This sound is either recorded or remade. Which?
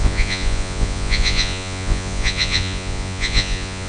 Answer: remade